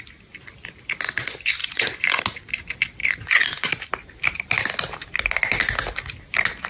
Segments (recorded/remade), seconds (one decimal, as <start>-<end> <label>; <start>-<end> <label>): 0.0-1.6 recorded; 1.6-2.2 remade; 2.2-3.0 recorded; 3.0-3.7 remade; 3.7-6.7 recorded